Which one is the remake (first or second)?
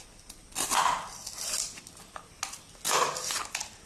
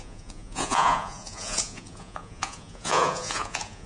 second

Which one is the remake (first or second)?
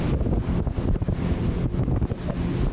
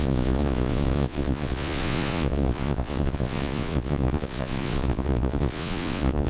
second